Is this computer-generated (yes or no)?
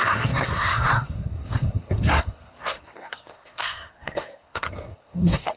yes